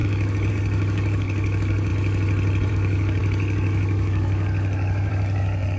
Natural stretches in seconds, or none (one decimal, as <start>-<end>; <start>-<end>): 1.9-2.7